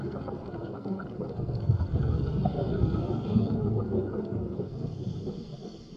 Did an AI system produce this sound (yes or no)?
yes